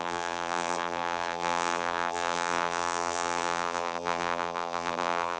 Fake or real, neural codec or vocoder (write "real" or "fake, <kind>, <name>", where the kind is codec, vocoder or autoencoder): fake, vocoder, BigVGAN v2